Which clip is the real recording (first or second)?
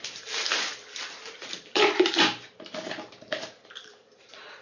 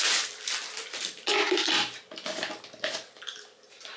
second